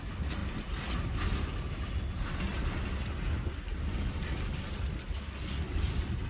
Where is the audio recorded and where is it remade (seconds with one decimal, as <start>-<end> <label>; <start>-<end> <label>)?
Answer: 0.0-6.3 recorded